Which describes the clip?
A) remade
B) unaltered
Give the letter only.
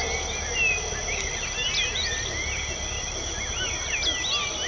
B